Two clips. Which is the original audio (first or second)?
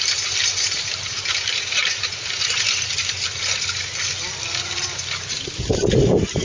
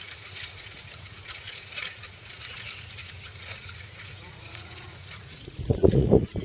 first